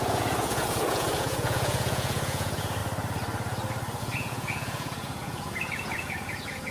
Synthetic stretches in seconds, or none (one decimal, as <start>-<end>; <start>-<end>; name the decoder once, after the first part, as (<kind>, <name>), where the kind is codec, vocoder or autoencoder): 0.0-2.8 (vocoder, Vocos); 4.0-6.7